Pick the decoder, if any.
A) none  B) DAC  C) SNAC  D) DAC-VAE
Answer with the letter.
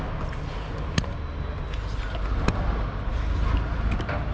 A